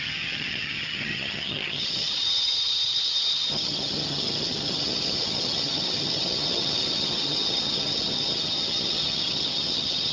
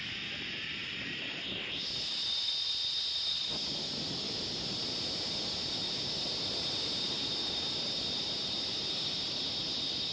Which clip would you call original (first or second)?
second